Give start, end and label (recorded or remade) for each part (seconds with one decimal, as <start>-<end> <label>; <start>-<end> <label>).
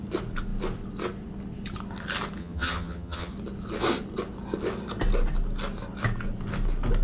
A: 0.0-2.4 recorded; 2.4-3.3 remade; 3.3-7.0 recorded